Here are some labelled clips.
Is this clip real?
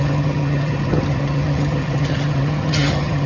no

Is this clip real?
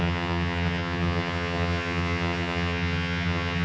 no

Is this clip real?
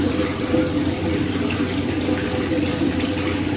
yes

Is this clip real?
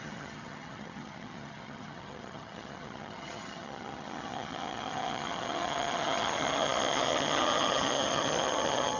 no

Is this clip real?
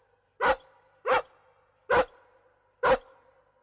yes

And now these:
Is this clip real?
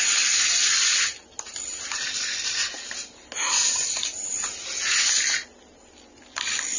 yes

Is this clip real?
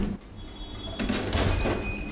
yes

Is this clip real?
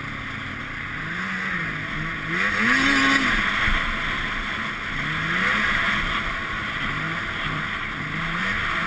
yes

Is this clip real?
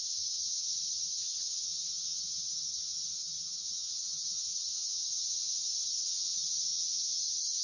no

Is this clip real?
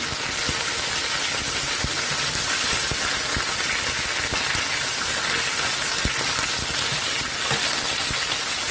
yes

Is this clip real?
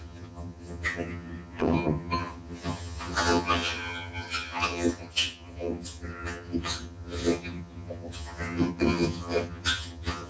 no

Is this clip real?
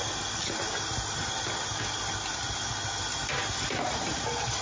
yes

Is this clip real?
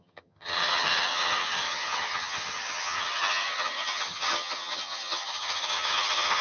no